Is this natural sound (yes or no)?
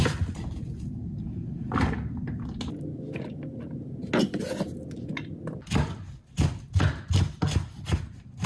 yes